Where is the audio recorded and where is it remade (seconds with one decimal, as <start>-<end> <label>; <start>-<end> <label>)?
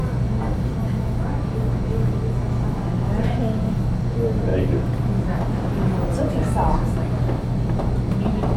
0.0-8.6 recorded